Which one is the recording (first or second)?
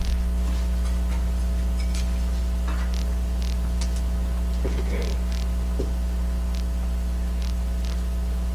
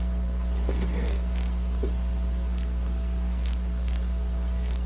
first